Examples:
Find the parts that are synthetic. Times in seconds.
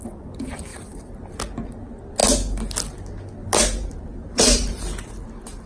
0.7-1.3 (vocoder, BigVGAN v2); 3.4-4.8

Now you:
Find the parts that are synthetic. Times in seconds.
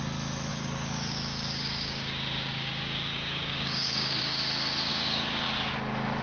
0.5-4.2 (codec, DAC); 4.9-5.5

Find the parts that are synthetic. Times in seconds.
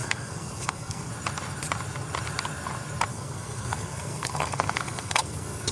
0.0-1.1 (codec, SNAC); 3.1-5.7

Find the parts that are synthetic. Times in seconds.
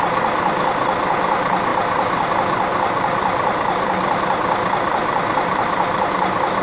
1.7-2.3 (vocoder, BigVGAN v2); 2.7-6.1